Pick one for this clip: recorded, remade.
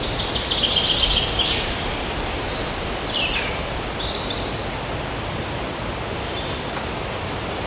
recorded